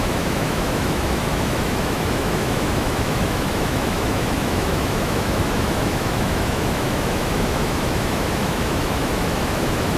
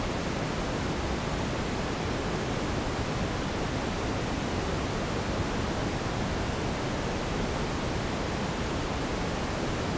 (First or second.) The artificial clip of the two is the first